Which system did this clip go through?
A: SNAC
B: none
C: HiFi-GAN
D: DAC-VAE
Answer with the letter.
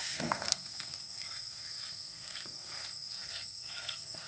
A